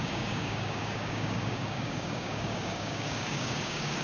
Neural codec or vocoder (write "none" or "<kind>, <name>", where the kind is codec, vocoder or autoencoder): codec, DAC